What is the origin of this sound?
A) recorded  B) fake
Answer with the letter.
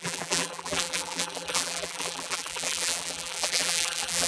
B